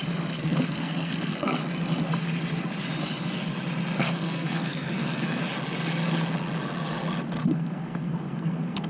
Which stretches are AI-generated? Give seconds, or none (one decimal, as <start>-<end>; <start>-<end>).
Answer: 0.4-1.6; 4.0-5.4; 7.4-8.9